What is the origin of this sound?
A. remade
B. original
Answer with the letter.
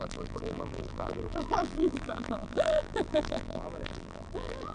A